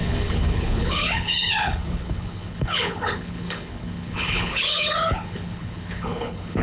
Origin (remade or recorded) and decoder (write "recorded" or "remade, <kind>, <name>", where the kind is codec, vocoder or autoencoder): remade, codec, HILCodec